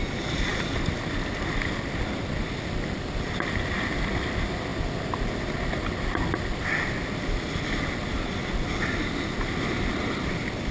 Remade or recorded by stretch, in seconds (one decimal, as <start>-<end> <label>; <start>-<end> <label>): 0.0-10.7 recorded